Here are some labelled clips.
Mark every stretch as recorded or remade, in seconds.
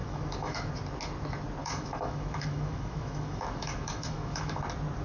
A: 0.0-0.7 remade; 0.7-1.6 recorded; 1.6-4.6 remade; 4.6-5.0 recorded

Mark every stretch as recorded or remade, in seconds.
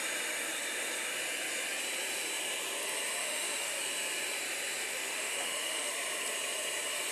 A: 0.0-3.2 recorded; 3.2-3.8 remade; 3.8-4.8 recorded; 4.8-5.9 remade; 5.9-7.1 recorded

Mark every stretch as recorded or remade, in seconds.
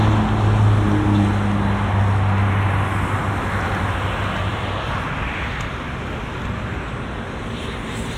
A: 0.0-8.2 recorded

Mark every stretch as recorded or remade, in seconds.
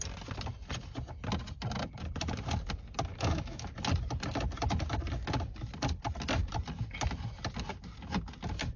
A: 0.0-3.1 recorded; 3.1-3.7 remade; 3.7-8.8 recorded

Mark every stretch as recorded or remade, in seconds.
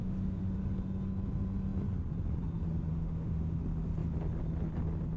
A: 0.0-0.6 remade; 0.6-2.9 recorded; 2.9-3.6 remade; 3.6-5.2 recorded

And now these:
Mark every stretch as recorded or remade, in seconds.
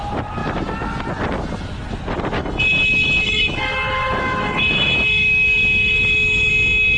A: 0.0-2.4 recorded; 2.4-6.5 remade; 6.5-7.0 recorded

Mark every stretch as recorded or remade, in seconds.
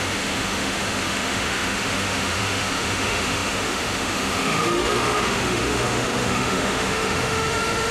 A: 0.0-7.9 remade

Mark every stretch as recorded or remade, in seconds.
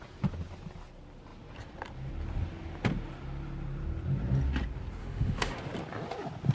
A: 0.0-5.0 recorded; 5.0-5.6 remade; 5.6-6.5 recorded